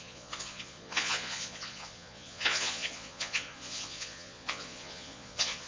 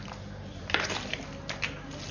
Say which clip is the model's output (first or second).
first